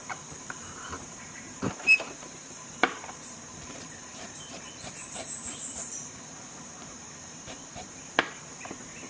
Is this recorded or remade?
remade